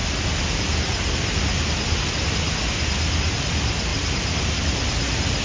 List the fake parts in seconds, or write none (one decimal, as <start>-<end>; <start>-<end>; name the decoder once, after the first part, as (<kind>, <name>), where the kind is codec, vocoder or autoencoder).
none